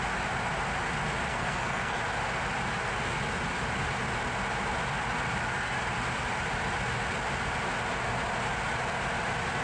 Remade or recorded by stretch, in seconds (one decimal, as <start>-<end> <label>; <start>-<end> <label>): 0.0-1.3 recorded; 1.3-2.0 remade; 2.0-9.6 recorded